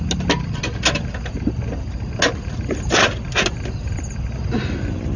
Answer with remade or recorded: recorded